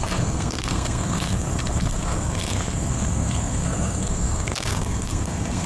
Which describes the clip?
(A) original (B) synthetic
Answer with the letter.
B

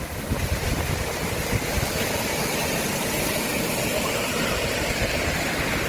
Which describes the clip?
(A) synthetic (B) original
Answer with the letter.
B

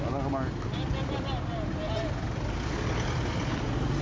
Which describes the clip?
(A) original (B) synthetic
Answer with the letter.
A